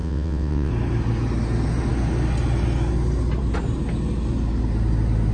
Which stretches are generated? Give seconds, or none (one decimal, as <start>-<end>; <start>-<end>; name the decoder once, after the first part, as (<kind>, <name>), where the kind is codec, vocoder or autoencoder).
0.0-0.7 (vocoder, WaveNeXt)